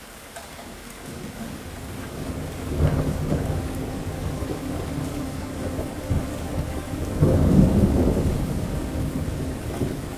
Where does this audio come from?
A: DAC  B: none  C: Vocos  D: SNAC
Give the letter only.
A